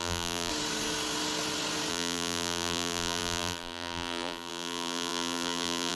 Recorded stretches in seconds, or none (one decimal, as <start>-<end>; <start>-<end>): 0.5-1.9

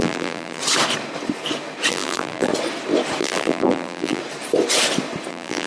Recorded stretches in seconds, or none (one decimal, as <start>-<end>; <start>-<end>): 0.6-1.9; 2.5-3.2; 4.2-5.3